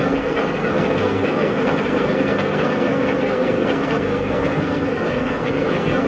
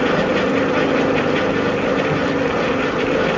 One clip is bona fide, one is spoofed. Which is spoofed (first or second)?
first